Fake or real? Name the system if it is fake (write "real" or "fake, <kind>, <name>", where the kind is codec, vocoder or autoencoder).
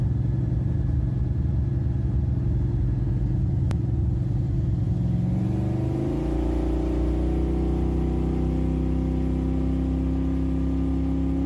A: real